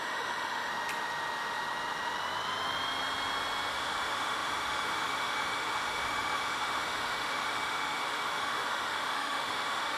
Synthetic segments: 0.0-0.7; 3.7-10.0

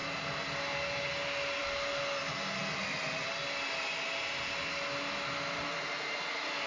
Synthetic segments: none